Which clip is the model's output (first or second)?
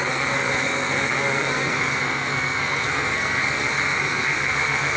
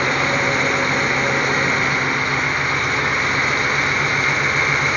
first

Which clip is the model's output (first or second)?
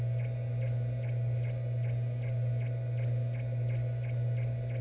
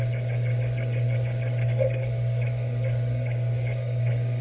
second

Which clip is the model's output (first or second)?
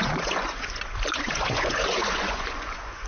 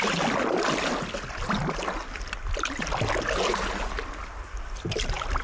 first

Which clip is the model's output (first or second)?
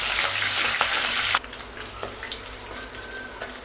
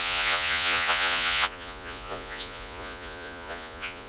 second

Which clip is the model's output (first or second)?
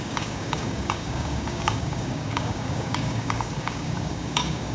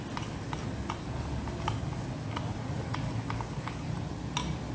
first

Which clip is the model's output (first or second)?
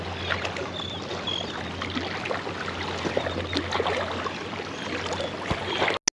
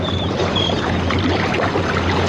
second